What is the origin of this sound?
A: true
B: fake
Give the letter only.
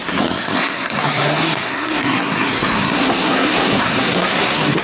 B